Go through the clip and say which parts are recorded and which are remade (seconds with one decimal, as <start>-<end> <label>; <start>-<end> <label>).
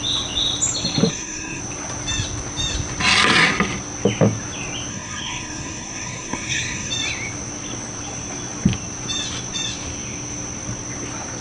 0.0-1.1 recorded; 1.1-1.6 remade; 1.6-4.9 recorded; 4.9-6.9 remade; 6.9-11.4 recorded